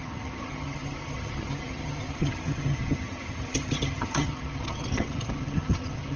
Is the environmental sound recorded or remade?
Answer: remade